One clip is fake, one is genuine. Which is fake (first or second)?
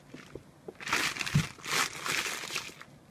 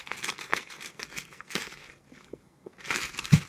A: second